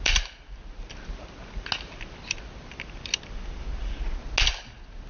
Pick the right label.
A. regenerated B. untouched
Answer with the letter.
B